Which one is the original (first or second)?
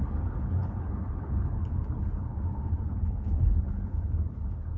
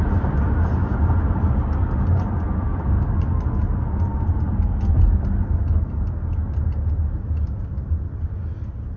second